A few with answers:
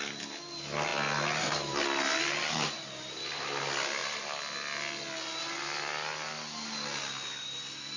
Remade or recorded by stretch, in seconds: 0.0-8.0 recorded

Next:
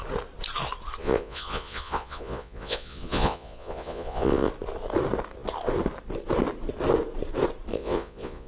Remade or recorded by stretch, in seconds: 0.0-1.0 recorded; 1.0-4.5 remade; 4.5-7.7 recorded; 7.7-8.5 remade